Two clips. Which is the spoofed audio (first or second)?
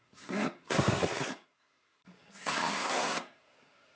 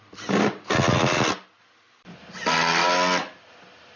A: first